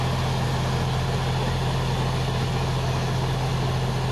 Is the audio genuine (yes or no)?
yes